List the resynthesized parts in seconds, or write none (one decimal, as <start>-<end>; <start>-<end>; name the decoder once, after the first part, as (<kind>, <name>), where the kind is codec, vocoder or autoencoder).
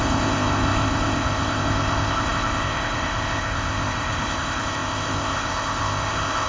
0.0-6.5 (codec, ZipCodec)